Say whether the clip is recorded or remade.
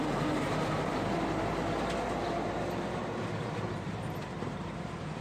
remade